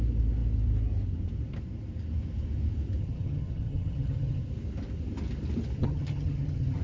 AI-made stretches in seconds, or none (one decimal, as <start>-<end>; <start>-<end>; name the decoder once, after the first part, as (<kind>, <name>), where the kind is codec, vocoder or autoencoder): 3.0-4.4 (vocoder, HiFi-GAN); 5.8-6.8